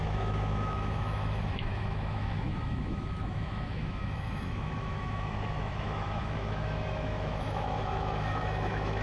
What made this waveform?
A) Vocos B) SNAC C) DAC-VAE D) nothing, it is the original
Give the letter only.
C